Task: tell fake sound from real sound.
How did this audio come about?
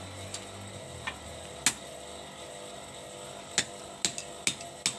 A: real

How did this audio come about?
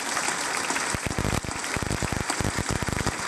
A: real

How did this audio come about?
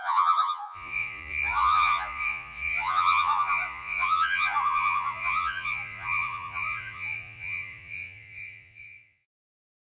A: fake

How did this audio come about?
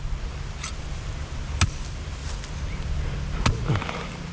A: real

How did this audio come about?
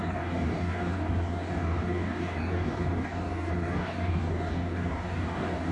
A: fake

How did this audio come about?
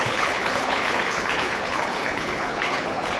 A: fake